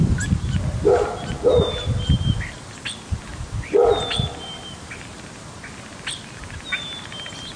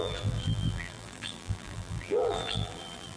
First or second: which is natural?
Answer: first